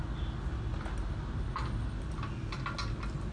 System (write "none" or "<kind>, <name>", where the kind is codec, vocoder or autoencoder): none